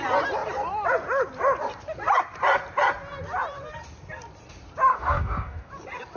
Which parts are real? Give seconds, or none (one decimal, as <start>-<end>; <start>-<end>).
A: 0.0-4.9; 5.7-6.2